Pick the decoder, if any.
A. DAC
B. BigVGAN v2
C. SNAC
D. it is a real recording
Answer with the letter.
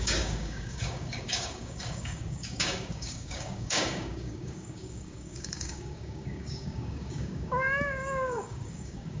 A